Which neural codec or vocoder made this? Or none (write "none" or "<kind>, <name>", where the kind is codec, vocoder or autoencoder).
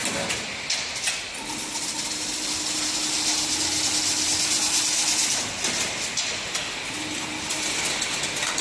none